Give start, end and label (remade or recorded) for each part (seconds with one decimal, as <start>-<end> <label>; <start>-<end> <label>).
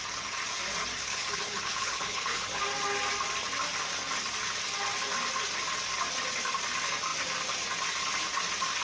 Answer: 0.0-1.0 recorded; 1.0-2.6 remade; 2.6-8.8 recorded